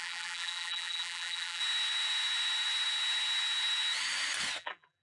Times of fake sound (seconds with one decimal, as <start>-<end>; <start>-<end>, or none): 0.0-1.6; 4.6-5.0